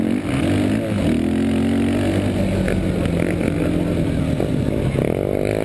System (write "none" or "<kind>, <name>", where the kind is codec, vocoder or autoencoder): none